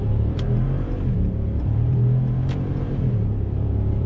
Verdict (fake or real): fake